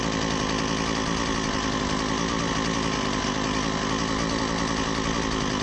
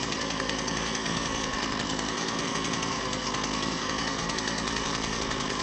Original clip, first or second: first